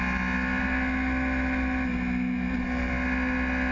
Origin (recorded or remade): recorded